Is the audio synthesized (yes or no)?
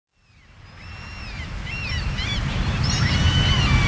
no